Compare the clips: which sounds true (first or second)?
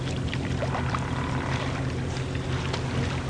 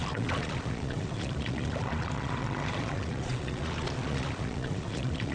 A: first